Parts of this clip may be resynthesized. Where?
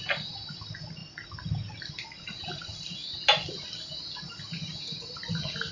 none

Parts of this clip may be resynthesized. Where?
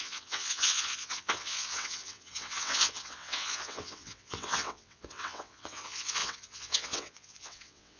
0.0-8.0 (vocoder, WaveNeXt)